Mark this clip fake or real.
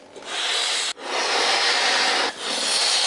real